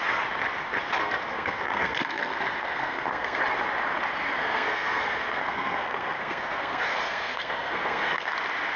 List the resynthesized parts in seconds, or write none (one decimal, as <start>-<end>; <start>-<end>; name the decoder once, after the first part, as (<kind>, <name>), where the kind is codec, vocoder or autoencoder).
1.0-3.4 (codec, SNAC); 4.4-8.3